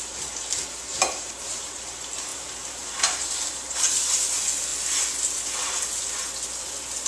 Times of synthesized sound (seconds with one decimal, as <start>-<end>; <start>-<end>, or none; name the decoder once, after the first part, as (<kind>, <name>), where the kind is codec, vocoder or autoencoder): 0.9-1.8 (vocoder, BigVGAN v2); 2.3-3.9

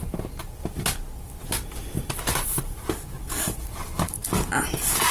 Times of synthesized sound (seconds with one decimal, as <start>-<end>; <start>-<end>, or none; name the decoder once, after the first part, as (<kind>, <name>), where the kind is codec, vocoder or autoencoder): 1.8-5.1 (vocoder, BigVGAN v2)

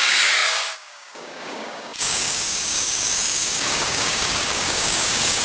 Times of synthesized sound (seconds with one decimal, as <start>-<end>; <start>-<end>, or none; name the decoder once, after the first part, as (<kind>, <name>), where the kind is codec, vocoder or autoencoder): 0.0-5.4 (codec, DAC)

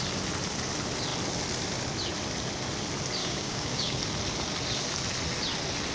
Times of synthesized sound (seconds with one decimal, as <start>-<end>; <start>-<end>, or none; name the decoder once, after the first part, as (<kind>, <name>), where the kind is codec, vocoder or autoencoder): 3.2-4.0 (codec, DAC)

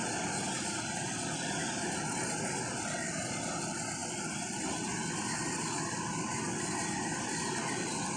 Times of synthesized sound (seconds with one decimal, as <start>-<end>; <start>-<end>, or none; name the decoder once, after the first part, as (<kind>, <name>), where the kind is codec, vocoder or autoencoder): none

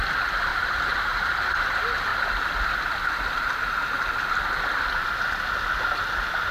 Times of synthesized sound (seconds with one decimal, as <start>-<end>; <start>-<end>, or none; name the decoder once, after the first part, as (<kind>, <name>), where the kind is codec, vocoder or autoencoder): 0.5-1.3 (vocoder, BigVGAN v2)

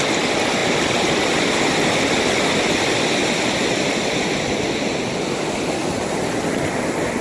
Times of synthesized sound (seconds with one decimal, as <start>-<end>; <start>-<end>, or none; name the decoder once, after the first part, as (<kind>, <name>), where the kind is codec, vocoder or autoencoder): 5.8-6.4 (vocoder, BigVGAN v2)

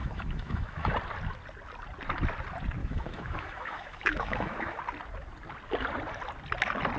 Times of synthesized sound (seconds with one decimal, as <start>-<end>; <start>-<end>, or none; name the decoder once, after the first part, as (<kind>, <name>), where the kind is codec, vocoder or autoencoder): 0.0-0.9 (autoencoder, DAC-VAE); 2.8-4.8